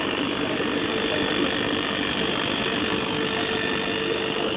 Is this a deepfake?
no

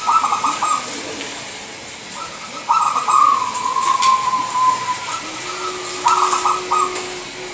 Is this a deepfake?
no